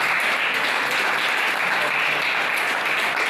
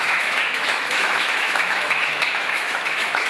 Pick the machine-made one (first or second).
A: second